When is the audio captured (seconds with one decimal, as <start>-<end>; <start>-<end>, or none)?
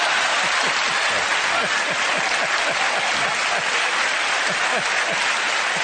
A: 0.0-5.8